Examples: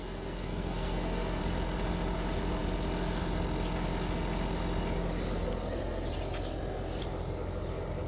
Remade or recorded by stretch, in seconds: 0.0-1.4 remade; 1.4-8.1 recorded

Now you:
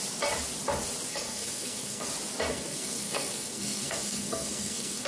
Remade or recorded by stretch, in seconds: 0.0-1.1 recorded; 1.1-2.1 remade; 2.1-2.5 recorded; 2.5-5.1 remade

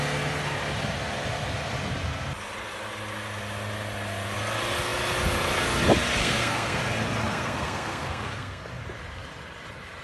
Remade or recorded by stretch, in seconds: 0.0-6.2 recorded; 6.2-6.8 remade; 6.8-7.3 recorded; 7.3-8.6 remade; 8.6-10.0 recorded

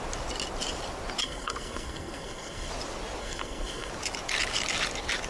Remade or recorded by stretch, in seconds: 0.0-1.2 recorded; 1.2-2.7 remade; 2.7-3.2 recorded; 3.2-3.9 remade; 3.9-5.3 recorded

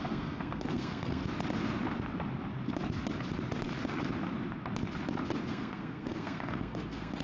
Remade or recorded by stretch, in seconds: 0.0-1.2 remade; 1.2-5.5 recorded; 5.5-7.2 remade

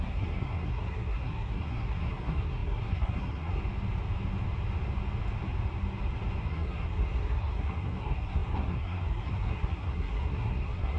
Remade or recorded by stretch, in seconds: 0.0-3.6 remade; 3.6-6.4 recorded; 6.4-11.0 remade

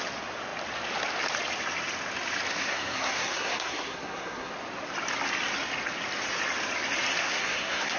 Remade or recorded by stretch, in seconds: 0.0-2.5 recorded; 2.5-4.5 remade; 4.5-7.2 recorded; 7.2-8.0 remade